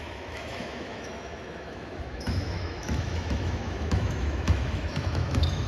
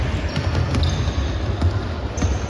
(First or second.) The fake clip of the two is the first